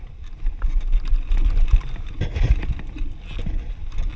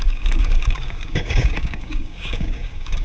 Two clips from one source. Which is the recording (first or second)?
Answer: first